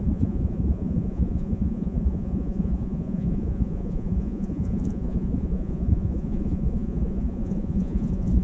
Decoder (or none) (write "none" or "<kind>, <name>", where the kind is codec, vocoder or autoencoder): vocoder, Vocos